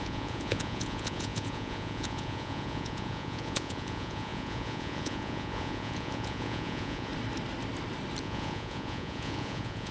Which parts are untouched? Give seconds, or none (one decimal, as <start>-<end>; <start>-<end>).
7.1-8.2